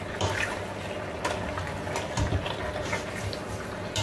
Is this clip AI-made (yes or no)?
no